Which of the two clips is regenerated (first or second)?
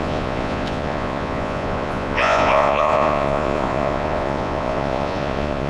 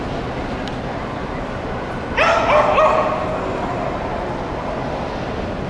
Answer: first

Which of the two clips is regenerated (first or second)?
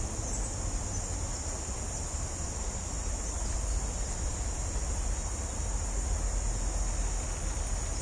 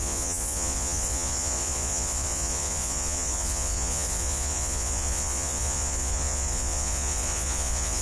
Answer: second